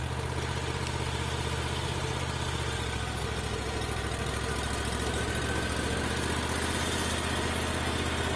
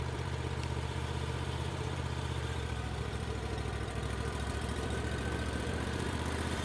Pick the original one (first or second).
first